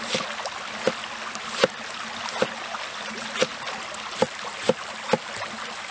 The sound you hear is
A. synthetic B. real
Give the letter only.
B